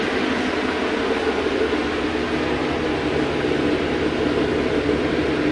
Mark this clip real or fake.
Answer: real